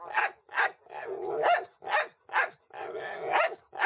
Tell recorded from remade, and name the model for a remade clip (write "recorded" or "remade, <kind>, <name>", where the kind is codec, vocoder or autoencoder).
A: recorded